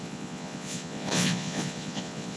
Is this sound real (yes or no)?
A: no